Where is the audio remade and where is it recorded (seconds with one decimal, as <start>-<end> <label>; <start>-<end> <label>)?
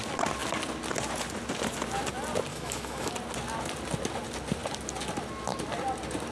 0.0-2.5 recorded; 2.5-3.1 remade; 3.1-6.3 recorded